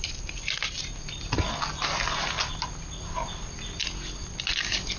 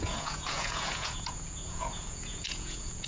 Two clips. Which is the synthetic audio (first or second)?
second